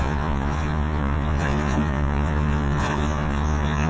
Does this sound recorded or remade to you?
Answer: remade